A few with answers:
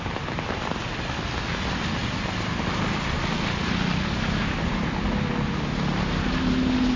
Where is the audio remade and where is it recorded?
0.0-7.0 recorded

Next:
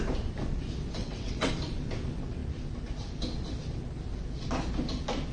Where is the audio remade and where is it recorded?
0.0-1.0 recorded; 1.0-1.5 remade; 1.5-5.3 recorded

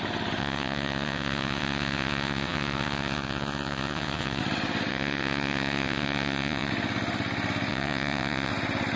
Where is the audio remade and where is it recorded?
0.0-0.4 recorded; 0.4-4.4 remade; 4.4-4.9 recorded; 4.9-6.7 remade; 6.7-7.7 recorded; 7.7-8.5 remade; 8.5-9.0 recorded